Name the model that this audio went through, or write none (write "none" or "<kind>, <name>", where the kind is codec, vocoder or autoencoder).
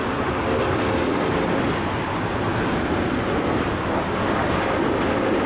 none